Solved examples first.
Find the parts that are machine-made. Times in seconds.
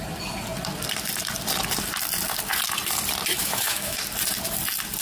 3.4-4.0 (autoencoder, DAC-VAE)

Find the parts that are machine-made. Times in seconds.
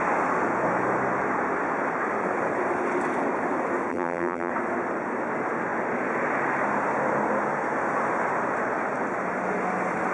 3.9-4.5 (vocoder, BigVGAN v2)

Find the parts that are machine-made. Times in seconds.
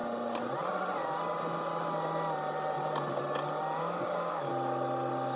3.8-4.5 (codec, DAC)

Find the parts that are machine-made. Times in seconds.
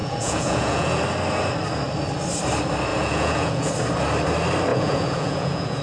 0.0-1.0 (vocoder, Vocos); 2.9-3.7; 4.7-5.8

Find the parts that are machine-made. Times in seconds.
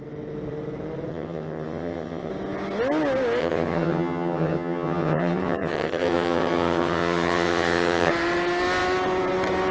1.1-2.3 (vocoder, HiFi-GAN); 3.4-8.1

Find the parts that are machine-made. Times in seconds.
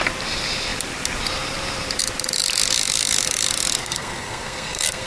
3.8-5.1 (codec, SNAC)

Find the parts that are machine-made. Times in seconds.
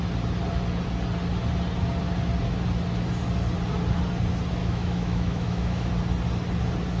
4.6-5.9 (autoencoder, DAC-VAE)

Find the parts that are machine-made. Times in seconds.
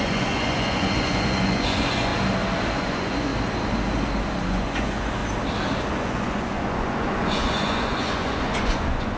0.0-2.1 (vocoder, Vocos); 2.7-3.3; 4.5-5.2; 6.0-9.2